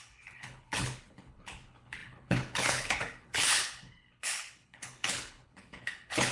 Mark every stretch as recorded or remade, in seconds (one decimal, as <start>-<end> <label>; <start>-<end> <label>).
0.0-6.3 remade